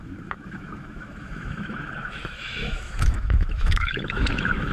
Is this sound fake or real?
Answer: fake